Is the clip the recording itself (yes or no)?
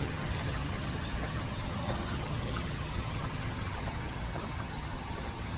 no